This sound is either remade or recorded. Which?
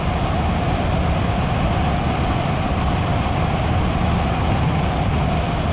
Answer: recorded